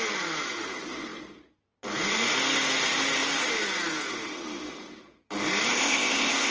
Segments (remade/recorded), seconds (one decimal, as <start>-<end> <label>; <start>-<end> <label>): 0.0-5.7 recorded; 5.7-6.5 remade